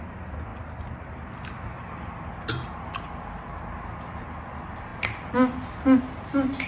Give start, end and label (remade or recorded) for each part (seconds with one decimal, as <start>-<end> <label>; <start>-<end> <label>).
0.0-6.7 recorded